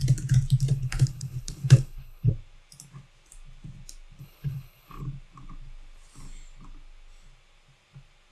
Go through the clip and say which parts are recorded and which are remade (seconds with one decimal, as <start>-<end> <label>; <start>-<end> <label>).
0.0-0.7 recorded; 0.7-2.3 remade; 2.3-4.2 recorded; 4.2-5.0 remade; 5.0-8.3 recorded